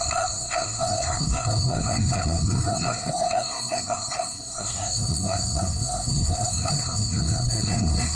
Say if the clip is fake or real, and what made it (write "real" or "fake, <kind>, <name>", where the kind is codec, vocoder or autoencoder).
fake, codec, SNAC